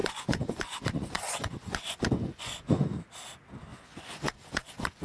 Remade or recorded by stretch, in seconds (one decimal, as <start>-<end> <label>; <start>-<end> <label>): 0.0-3.0 remade; 3.0-3.7 recorded; 3.7-5.0 remade